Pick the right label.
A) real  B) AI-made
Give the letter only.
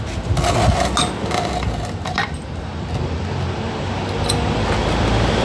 A